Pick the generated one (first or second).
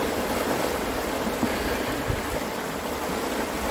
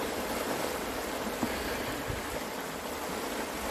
first